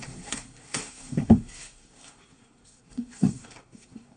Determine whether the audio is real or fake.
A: fake